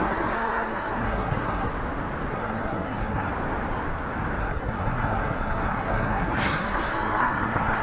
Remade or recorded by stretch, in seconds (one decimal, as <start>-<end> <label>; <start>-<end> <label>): 0.0-1.7 remade; 1.7-2.3 recorded; 2.3-3.3 remade; 3.3-4.4 recorded; 4.4-7.8 remade